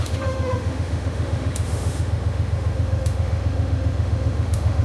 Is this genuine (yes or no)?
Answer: no